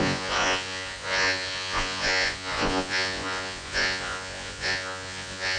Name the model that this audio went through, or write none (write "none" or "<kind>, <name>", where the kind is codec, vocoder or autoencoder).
vocoder, Vocos